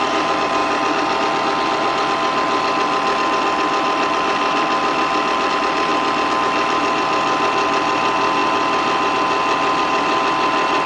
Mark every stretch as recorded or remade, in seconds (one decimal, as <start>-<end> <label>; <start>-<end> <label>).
0.0-10.9 recorded